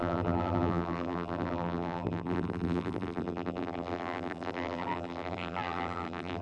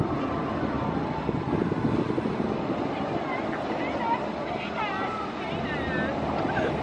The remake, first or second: first